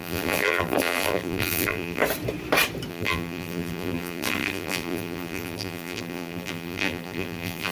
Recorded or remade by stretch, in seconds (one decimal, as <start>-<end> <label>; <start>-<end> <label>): 0.0-2.0 remade; 2.0-2.9 recorded; 2.9-7.7 remade